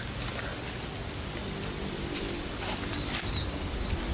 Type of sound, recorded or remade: recorded